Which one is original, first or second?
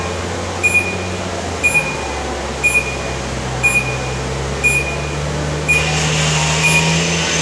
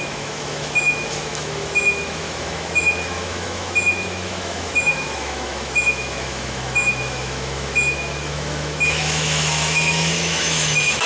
first